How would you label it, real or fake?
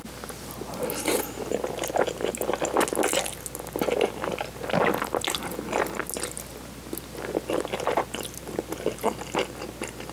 real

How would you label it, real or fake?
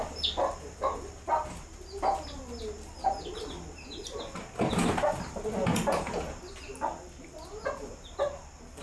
real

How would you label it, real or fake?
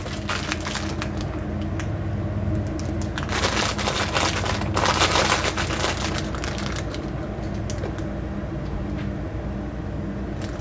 real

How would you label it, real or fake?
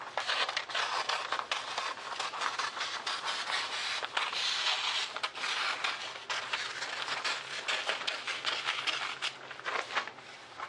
real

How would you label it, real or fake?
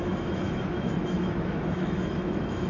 fake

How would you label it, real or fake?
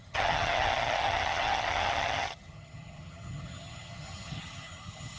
fake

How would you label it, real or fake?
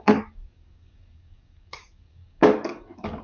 fake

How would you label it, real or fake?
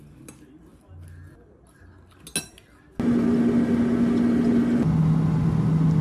real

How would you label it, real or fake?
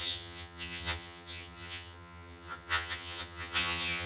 fake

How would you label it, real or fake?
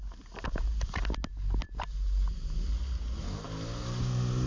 real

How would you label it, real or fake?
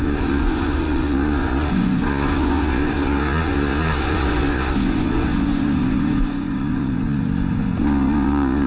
fake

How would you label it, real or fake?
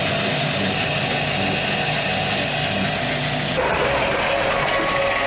real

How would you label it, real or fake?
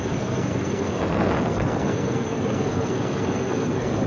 fake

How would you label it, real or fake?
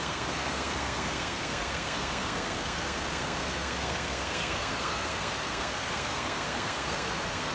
fake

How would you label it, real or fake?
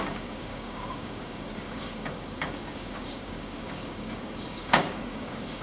fake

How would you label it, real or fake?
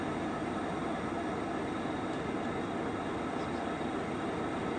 real